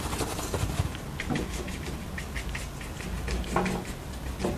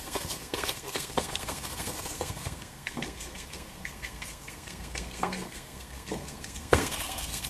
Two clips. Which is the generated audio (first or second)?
second